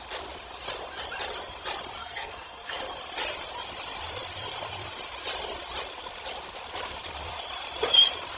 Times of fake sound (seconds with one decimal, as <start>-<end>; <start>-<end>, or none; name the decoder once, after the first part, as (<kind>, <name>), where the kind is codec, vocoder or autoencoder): 2.0-2.8 (codec, SNAC)